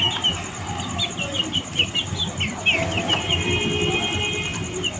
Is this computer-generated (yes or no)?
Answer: no